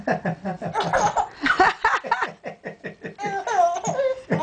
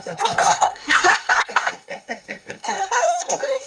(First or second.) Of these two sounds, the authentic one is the first